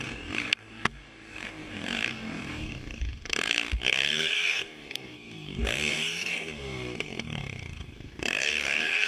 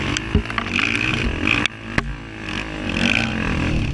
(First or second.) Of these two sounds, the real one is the second